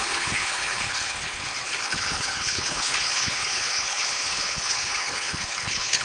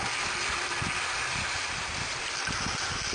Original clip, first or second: second